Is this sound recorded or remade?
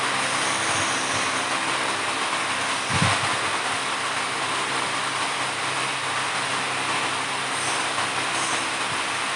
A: recorded